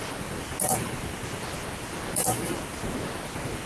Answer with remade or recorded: recorded